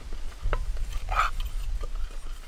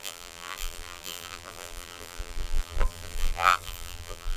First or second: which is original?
first